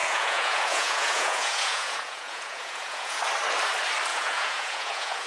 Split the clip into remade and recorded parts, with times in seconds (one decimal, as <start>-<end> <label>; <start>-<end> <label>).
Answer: 0.0-3.2 remade; 3.2-4.1 recorded; 4.1-5.3 remade